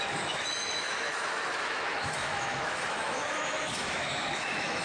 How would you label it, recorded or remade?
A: remade